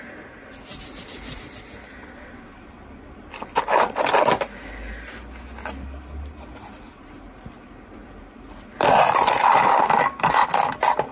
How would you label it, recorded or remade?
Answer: recorded